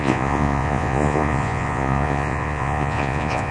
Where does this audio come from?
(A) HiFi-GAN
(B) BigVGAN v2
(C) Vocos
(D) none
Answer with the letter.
C